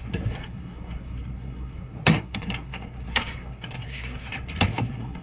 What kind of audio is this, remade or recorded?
remade